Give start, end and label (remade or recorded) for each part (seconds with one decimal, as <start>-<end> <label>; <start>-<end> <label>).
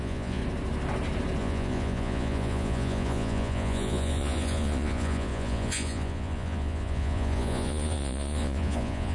0.0-0.4 remade; 0.4-1.4 recorded; 1.4-9.1 remade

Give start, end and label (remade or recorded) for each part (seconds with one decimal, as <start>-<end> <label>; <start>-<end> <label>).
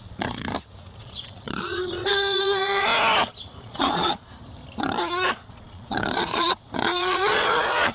0.0-0.5 remade; 0.5-1.0 recorded; 1.0-2.9 remade; 2.9-3.6 recorded; 3.6-4.3 remade; 4.3-5.3 recorded; 5.3-7.9 remade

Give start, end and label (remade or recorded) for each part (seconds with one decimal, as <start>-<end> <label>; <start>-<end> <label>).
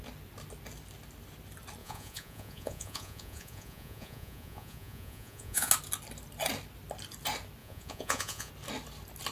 0.0-1.8 recorded; 1.8-5.7 remade; 5.7-7.6 recorded; 7.6-8.5 remade; 8.5-9.3 recorded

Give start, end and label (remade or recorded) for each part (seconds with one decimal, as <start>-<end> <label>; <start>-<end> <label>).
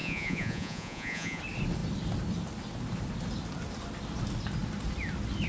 0.0-1.4 remade; 1.4-5.5 recorded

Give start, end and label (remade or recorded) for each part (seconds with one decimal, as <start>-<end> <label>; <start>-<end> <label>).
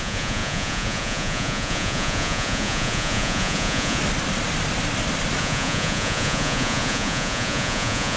0.0-4.0 remade; 4.0-5.4 recorded; 5.4-8.2 remade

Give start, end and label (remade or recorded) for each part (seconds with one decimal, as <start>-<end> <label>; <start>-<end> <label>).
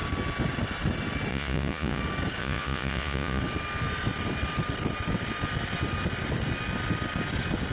0.0-1.3 recorded; 1.3-2.0 remade; 2.0-2.4 recorded; 2.4-3.4 remade; 3.4-7.7 recorded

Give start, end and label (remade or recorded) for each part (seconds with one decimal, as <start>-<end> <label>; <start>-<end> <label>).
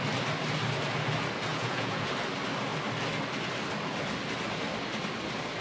0.0-1.5 recorded; 1.5-2.1 remade; 2.1-5.6 recorded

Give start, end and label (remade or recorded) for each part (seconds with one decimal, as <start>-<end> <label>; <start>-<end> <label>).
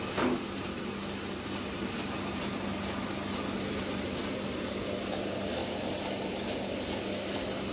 0.0-7.7 recorded